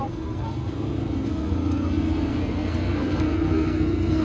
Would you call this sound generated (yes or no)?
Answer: yes